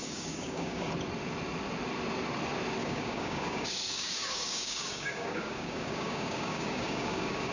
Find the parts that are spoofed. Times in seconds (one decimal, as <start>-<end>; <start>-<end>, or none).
0.0-0.9; 2.8-7.5

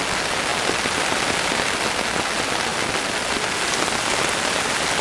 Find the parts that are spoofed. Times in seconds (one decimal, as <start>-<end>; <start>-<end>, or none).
none

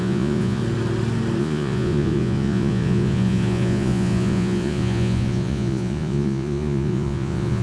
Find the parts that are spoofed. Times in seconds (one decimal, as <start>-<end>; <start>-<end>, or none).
0.0-0.6; 1.4-7.6

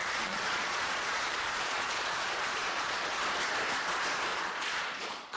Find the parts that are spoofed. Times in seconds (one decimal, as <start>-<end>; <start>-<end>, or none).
0.0-3.2; 4.3-5.4

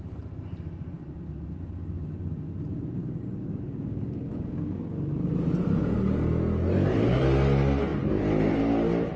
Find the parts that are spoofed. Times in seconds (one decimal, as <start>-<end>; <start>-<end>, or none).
3.0-4.8

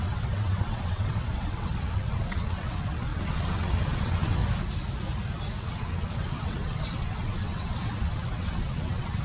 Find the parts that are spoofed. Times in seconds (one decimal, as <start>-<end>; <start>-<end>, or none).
0.0-4.4; 5.6-9.2

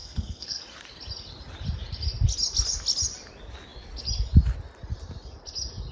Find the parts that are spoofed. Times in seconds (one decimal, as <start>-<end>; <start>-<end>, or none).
0.0-0.6

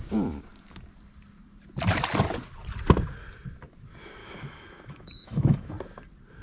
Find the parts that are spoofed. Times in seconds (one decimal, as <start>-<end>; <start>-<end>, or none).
4.2-5.7